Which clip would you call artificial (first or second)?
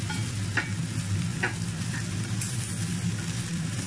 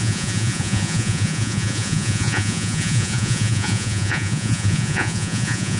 second